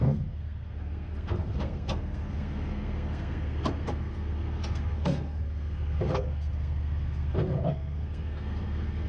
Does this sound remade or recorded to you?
remade